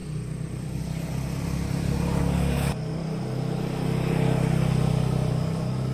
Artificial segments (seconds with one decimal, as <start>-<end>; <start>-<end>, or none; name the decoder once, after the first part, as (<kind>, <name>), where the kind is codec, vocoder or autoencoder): 2.2-3.0 (codec, DAC); 5.3-5.9